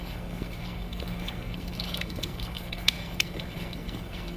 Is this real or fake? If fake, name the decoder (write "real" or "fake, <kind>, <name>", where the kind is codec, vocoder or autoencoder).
fake, codec, SNAC